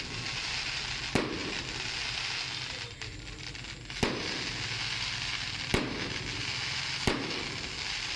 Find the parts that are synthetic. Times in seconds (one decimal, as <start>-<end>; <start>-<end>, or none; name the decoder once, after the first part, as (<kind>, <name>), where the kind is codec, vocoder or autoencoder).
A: none